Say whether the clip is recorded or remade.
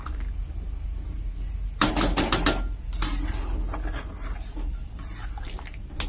recorded